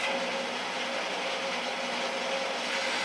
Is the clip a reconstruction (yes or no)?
no